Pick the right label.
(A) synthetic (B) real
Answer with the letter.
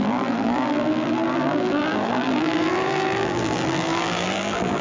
A